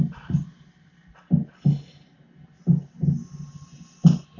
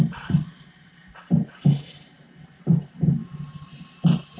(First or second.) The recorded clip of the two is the first